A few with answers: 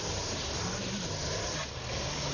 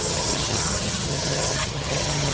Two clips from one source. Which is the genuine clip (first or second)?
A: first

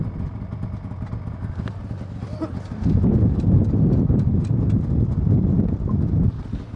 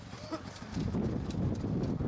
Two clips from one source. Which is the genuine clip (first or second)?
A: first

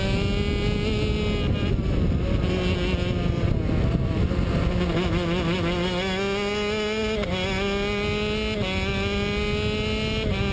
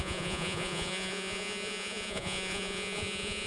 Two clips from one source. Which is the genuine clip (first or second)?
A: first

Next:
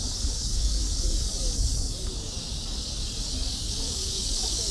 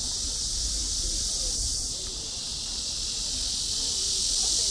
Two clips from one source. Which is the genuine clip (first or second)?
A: second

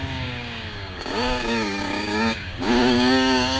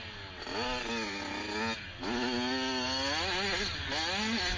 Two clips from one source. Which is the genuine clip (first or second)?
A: second